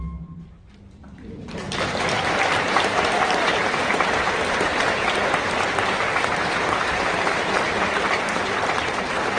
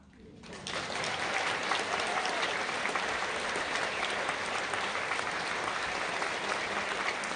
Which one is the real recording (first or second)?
second